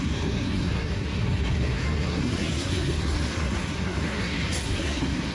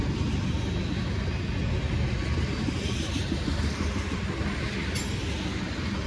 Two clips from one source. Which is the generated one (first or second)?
first